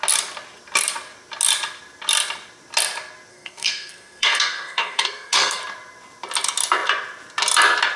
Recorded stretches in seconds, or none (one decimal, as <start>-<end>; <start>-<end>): 0.0-3.3; 5.6-8.0